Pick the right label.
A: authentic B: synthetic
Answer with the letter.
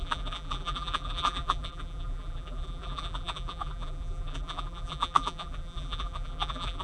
B